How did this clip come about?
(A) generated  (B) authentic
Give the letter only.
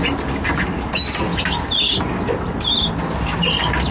B